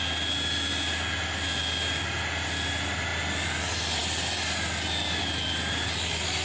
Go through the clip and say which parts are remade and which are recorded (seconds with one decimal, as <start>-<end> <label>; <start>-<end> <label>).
0.0-6.4 recorded